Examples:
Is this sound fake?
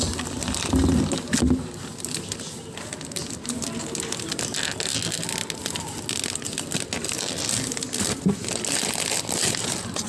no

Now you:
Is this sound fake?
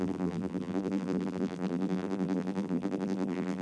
yes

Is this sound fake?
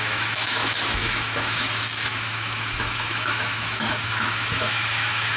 yes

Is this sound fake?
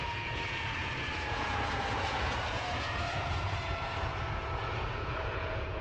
yes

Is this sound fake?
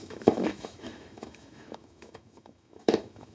yes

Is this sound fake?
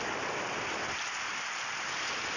no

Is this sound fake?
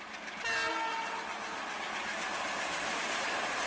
no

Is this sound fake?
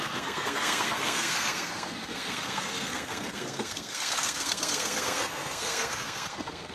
yes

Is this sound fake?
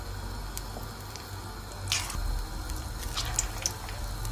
no